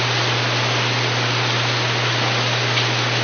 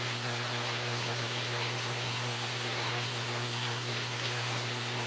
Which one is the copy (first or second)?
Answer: second